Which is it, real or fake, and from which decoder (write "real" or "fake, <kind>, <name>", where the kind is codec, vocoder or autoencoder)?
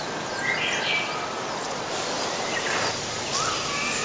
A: real